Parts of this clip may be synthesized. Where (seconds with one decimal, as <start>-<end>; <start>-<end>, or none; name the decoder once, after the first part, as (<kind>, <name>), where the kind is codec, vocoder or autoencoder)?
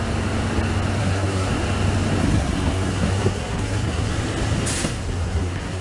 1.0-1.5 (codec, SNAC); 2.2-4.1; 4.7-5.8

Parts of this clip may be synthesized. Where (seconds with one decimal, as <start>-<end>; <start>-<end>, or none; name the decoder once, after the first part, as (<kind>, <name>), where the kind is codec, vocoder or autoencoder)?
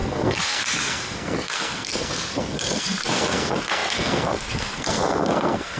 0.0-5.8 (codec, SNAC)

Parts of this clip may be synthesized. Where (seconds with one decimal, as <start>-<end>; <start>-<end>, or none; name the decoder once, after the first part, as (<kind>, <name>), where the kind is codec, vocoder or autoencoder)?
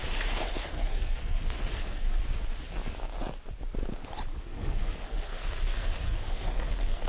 0.6-2.2 (codec, SNAC); 4.4-7.1